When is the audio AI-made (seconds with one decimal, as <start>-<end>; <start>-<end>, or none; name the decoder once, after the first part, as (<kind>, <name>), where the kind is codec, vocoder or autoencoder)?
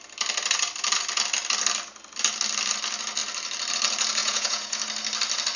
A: 4.2-4.8 (vocoder, Vocos)